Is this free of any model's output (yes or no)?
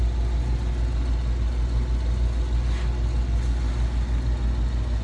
yes